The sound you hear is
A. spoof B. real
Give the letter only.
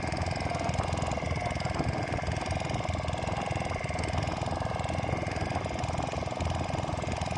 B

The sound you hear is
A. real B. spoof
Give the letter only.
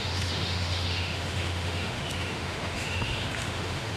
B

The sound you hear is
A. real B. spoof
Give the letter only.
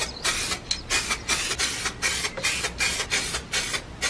A